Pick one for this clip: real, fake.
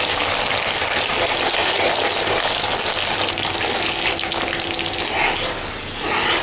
real